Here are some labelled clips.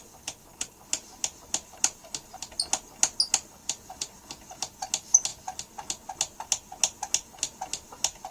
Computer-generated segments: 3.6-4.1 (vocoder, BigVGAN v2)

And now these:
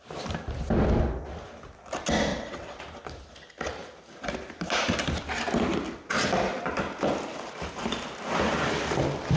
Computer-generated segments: 2.3-2.8 (vocoder, WaveNeXt)

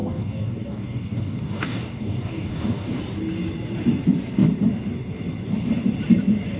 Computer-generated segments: 0.0-3.0 (codec, DAC)